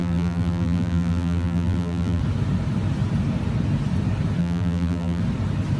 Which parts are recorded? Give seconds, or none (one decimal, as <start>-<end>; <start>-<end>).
2.2-4.4; 5.2-5.8